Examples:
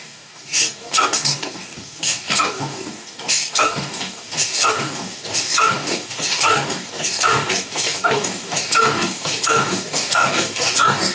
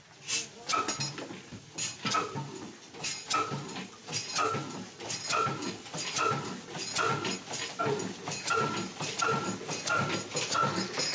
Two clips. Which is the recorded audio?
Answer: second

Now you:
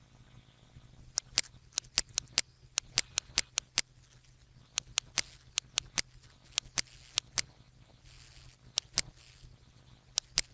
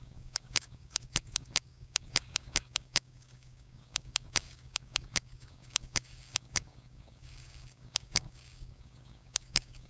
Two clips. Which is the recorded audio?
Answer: first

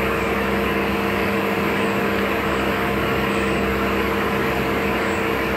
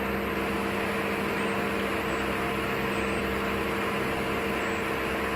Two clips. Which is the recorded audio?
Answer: second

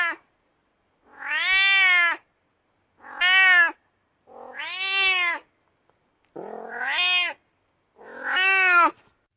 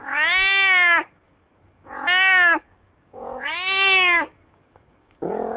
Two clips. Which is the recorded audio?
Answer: first